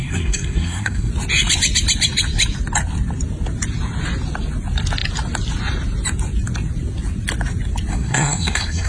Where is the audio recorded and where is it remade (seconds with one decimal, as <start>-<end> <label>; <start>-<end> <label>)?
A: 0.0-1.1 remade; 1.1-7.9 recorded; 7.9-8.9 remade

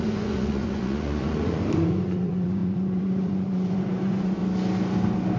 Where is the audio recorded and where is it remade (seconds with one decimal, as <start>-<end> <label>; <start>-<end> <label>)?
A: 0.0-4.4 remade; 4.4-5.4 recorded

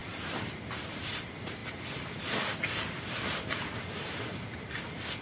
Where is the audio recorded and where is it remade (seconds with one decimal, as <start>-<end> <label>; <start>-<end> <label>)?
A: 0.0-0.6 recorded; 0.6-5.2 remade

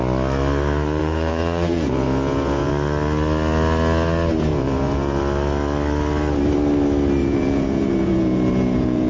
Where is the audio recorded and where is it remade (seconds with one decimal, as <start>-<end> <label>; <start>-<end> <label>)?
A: 0.0-1.0 recorded; 1.0-2.7 remade; 2.7-4.5 recorded; 4.5-5.2 remade; 5.2-7.2 recorded; 7.2-9.1 remade

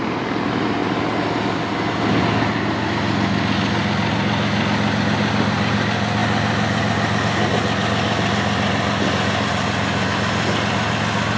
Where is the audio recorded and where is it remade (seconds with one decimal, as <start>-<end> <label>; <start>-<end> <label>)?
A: 0.0-11.4 recorded

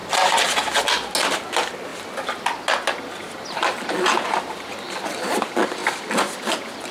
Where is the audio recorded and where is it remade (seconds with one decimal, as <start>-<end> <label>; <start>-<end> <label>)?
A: 0.0-6.9 recorded

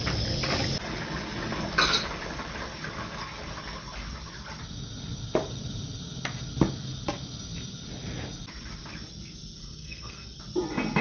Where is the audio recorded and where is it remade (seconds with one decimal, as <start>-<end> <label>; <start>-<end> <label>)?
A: 0.0-9.6 recorded; 9.6-10.4 remade; 10.4-11.0 recorded